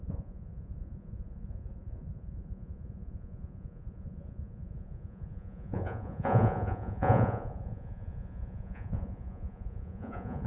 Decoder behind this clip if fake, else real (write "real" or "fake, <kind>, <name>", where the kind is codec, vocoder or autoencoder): fake, vocoder, Vocos